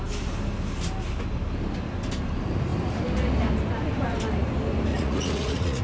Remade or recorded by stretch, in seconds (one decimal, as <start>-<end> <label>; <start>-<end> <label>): 0.0-4.9 recorded; 4.9-5.8 remade